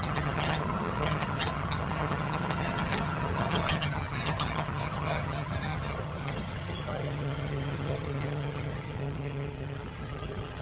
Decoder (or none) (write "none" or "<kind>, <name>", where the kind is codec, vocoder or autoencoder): vocoder, HiFi-GAN